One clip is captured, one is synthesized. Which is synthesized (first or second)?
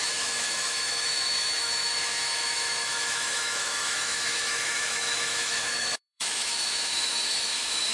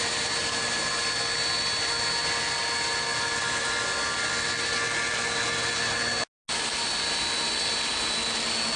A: first